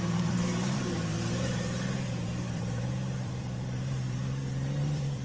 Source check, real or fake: fake